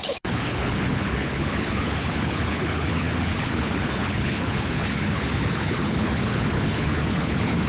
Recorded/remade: remade